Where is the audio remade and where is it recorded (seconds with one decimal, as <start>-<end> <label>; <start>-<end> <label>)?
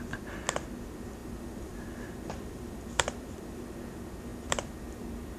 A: 0.0-1.2 recorded; 1.2-3.6 remade; 3.6-4.3 recorded; 4.3-4.8 remade; 4.8-5.4 recorded